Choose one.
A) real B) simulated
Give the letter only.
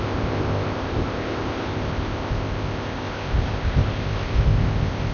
B